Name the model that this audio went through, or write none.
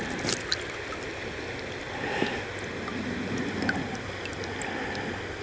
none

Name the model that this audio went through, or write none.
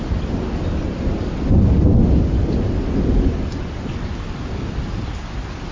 none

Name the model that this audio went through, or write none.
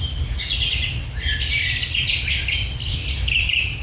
none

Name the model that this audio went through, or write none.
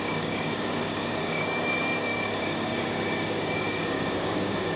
codec, DAC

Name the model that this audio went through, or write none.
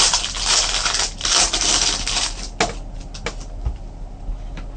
none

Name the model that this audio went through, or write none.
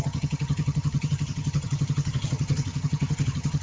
vocoder, HiFi-GAN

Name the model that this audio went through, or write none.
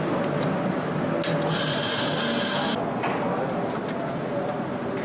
none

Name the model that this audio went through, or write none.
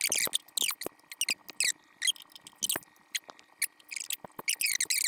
none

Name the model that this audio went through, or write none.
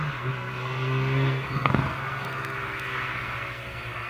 codec, SNAC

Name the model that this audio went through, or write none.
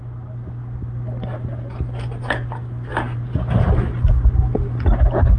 none